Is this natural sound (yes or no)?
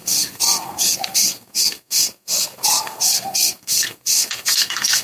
no